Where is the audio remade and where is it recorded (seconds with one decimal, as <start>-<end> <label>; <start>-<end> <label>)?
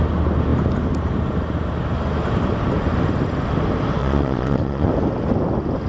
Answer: 0.0-4.0 recorded; 4.0-4.9 remade; 4.9-5.9 recorded